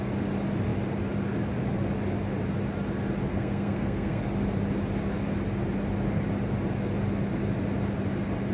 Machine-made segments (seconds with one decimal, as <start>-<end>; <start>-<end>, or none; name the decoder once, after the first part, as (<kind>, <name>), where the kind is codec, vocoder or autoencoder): 3.3-4.2 (codec, SNAC)